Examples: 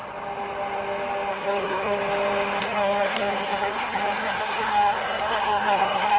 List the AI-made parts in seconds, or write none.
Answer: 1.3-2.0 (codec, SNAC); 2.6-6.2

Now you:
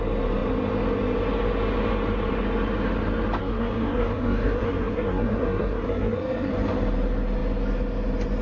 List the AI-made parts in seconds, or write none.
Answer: 3.4-6.5 (codec, SNAC)

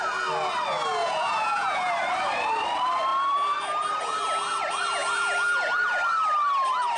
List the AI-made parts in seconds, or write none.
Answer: 1.0-1.9 (vocoder, Vocos)

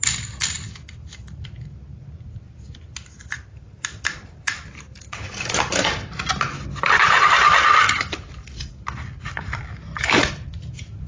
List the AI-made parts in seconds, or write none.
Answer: 3.2-6.2 (vocoder, BigVGAN v2)

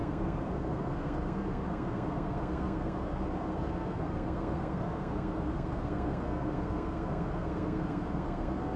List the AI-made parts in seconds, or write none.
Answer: 0.0-8.8 (codec, SNAC)

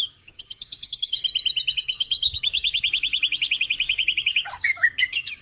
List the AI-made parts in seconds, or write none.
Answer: 0.0-1.2 (codec, DAC); 1.7-5.4

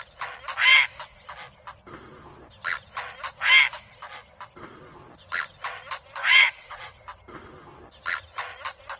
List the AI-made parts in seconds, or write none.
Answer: 6.2-7.0 (vocoder, Vocos)

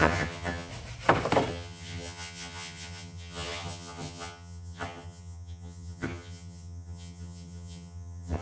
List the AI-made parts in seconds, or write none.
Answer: 0.0-0.7 (vocoder, HiFi-GAN); 1.5-8.4